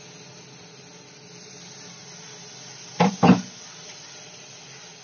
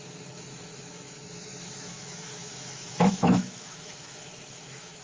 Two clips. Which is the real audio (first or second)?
first